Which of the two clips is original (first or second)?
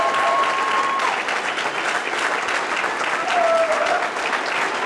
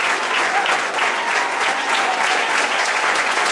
first